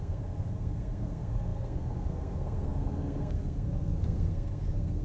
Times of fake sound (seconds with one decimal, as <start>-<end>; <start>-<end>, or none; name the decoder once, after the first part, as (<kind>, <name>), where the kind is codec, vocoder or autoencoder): 0.0-5.0 (codec, SNAC)